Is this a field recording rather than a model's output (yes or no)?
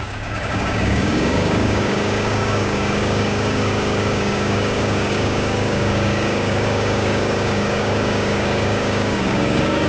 no